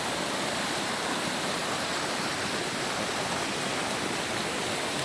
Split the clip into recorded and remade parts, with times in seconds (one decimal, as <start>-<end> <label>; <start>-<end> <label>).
0.0-5.0 recorded